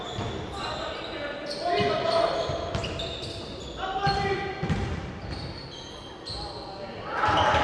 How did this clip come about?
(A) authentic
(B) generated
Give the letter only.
A